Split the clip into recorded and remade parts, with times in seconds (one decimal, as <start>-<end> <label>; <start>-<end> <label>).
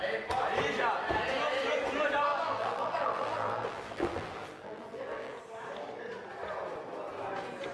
0.0-2.3 recorded; 2.3-5.4 remade; 5.4-7.7 recorded